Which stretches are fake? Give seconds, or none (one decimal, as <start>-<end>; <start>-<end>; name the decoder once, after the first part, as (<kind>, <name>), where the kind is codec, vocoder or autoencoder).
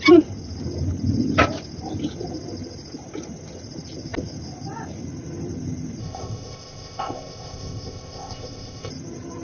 6.0-8.9 (codec, ZipCodec)